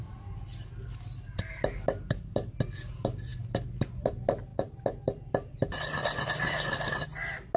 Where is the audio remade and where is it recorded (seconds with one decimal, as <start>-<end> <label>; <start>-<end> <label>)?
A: 0.0-7.6 recorded